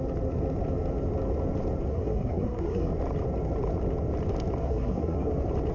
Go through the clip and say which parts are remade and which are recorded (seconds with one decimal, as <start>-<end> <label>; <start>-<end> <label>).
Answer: 0.0-1.9 recorded; 1.9-2.9 remade; 2.9-4.6 recorded; 4.6-5.3 remade; 5.3-5.7 recorded

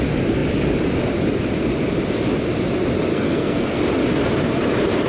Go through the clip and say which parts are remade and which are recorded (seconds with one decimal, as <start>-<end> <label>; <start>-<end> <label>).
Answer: 0.0-3.1 recorded; 3.1-3.8 remade; 3.8-5.1 recorded